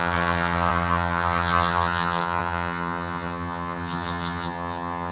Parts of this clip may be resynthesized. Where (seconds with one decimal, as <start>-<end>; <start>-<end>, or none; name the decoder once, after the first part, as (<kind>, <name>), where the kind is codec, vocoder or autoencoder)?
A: 0.0-5.1 (vocoder, HiFi-GAN)

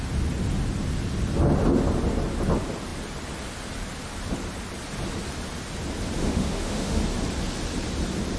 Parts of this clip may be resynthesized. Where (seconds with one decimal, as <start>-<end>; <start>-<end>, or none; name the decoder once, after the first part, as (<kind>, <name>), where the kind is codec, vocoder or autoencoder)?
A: 6.2-7.0 (autoencoder, DAC-VAE)

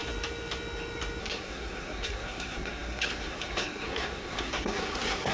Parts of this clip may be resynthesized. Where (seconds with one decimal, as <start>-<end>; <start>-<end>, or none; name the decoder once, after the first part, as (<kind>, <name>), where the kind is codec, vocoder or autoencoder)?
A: 1.2-5.3 (codec, SNAC)

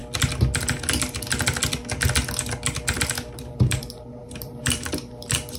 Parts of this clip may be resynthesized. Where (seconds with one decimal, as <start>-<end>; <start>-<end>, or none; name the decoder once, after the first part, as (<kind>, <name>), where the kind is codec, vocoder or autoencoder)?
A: 3.4-5.6 (vocoder, BigVGAN v2)

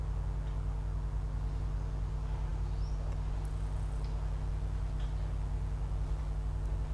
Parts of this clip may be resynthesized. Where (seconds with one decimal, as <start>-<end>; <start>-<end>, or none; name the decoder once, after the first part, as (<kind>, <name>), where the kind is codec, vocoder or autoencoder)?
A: none

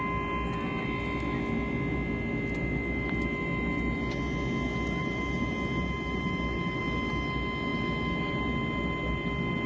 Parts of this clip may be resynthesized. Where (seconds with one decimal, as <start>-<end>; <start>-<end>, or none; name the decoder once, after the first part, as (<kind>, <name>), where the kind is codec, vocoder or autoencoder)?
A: 5.0-6.8 (vocoder, BigVGAN v2)